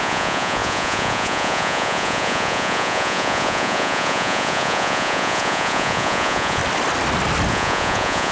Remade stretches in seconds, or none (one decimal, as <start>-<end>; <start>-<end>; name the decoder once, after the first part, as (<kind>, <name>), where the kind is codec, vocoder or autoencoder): 0.0-6.6 (vocoder, Vocos); 7.5-8.3